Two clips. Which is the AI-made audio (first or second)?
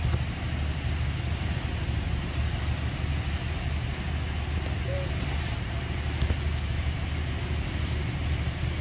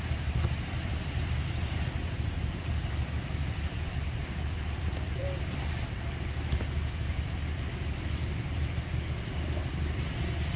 second